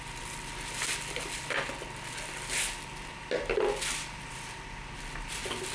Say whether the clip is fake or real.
real